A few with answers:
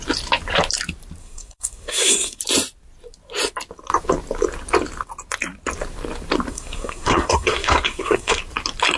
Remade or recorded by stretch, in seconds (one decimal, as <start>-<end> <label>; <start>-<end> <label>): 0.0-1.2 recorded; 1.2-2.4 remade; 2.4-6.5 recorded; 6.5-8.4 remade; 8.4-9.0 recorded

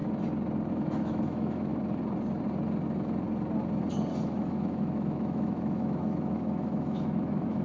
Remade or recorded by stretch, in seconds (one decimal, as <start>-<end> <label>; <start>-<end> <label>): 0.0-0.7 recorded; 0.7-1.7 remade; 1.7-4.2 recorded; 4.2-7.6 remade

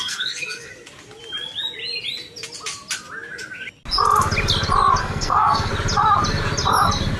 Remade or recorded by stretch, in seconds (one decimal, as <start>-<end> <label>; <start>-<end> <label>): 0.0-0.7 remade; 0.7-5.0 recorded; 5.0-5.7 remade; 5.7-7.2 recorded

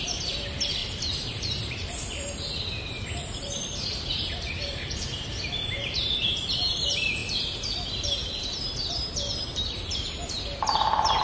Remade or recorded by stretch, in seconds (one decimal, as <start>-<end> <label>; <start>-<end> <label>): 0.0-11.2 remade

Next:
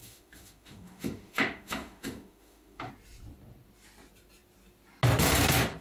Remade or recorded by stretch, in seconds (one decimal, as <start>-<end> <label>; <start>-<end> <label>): 0.0-2.9 remade; 2.9-5.8 recorded